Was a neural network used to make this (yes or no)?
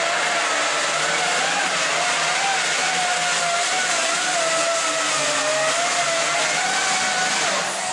no